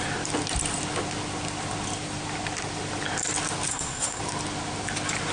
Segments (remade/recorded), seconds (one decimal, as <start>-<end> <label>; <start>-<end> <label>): 0.0-3.7 recorded; 3.7-4.2 remade; 4.2-5.3 recorded